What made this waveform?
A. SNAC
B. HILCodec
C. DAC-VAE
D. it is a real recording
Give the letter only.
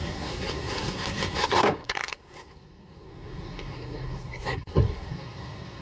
A